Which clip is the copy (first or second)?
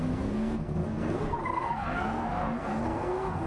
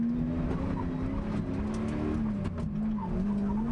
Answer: first